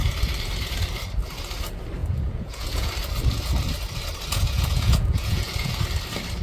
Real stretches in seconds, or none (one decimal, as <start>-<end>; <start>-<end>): 0.0-2.0; 2.9-4.3; 5.7-6.4